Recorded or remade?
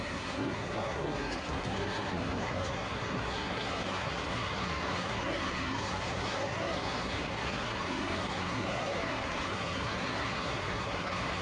remade